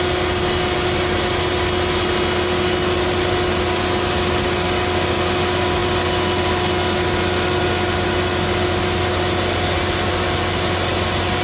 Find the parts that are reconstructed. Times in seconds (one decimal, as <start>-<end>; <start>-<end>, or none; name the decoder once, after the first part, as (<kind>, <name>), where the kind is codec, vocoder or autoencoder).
none